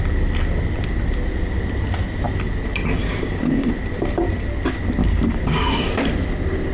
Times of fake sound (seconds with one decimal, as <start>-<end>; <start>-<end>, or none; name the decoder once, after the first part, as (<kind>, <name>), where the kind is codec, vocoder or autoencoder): 3.0-3.7 (codec, DAC); 5.0-5.9